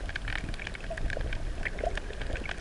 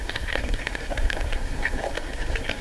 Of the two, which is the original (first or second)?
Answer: first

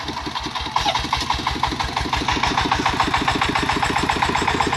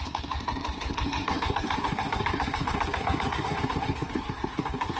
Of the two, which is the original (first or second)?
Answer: first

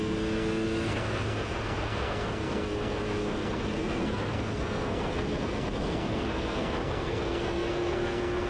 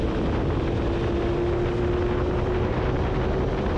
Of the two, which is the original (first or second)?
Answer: second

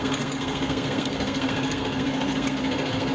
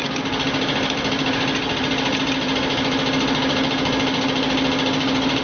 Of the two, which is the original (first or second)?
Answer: second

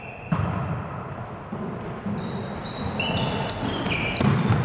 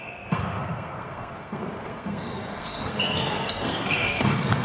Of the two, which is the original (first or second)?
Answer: first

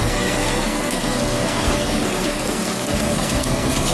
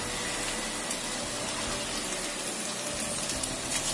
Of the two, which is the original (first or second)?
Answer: second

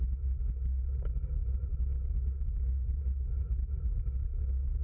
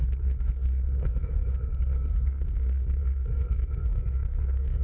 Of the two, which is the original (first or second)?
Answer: first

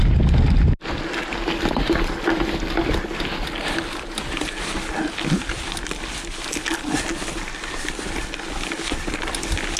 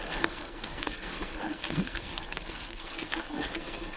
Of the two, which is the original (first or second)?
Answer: first